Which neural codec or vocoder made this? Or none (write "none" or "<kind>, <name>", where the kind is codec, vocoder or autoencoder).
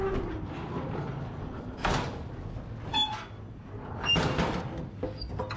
none